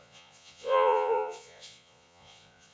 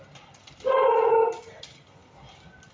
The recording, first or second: second